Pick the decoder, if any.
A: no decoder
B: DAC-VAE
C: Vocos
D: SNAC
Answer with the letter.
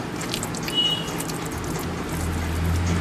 A